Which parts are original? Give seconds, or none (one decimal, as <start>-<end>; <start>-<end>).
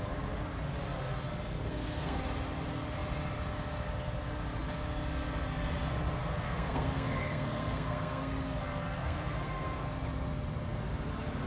0.0-1.3; 2.2-6.2; 9.8-11.5